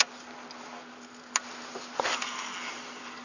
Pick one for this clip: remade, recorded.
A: recorded